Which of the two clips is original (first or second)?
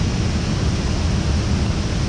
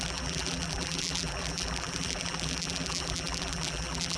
first